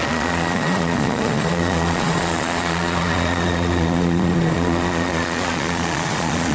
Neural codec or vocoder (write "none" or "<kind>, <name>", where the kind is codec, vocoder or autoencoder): vocoder, Vocos